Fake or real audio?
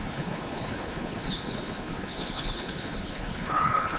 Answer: fake